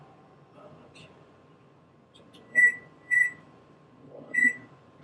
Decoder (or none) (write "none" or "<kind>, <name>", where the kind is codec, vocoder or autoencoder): vocoder, Vocos